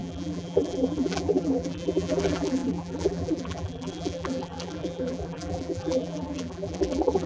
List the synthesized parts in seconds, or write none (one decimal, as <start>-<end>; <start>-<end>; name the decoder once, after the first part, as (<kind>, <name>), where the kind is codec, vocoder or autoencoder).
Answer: 0.0-7.3 (vocoder, BigVGAN v2)